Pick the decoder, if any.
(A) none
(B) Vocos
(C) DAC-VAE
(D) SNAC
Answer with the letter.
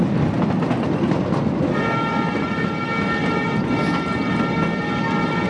A